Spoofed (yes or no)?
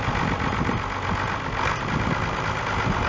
no